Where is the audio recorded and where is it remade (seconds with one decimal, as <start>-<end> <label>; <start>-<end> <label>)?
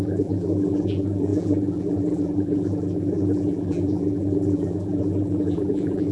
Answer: 0.0-6.1 remade